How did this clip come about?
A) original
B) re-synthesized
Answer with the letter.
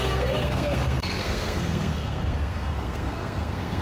B